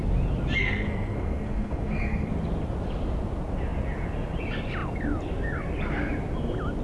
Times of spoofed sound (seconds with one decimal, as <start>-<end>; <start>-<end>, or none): 0.6-2.3